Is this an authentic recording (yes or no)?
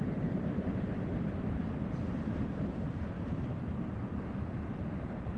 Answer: no